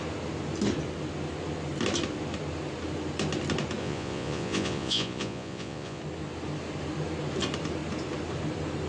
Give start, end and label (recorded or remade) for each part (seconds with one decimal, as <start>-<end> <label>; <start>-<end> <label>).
0.0-3.8 recorded; 3.8-6.0 remade; 6.0-8.9 recorded